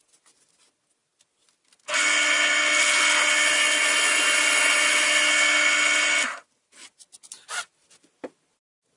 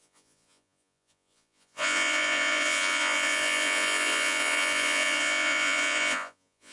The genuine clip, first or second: first